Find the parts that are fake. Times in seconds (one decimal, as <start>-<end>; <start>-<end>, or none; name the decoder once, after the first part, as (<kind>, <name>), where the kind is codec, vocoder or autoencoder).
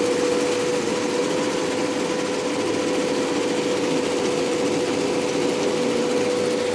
none